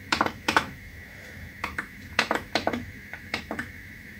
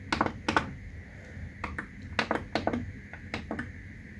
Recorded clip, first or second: second